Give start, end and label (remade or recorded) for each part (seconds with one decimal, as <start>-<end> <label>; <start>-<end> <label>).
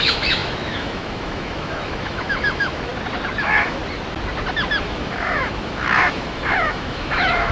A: 0.0-2.9 remade; 2.9-3.4 recorded; 3.4-3.8 remade; 3.8-4.8 recorded; 4.8-7.5 remade